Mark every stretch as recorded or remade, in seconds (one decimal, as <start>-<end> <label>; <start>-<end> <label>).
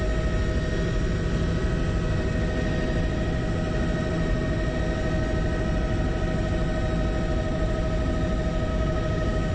0.0-8.7 recorded; 8.7-9.5 remade